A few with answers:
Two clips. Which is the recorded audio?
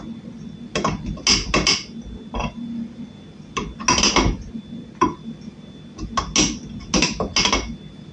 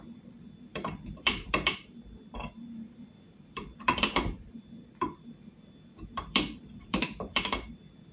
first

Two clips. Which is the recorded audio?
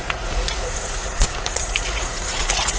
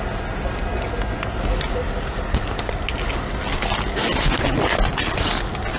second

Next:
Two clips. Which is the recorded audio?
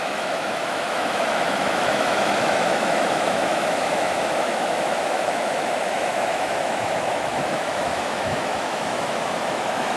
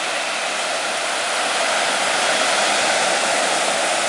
second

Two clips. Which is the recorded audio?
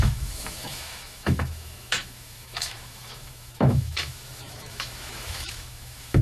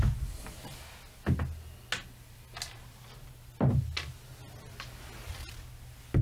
second